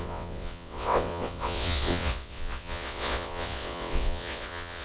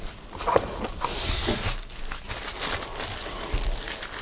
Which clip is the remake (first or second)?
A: first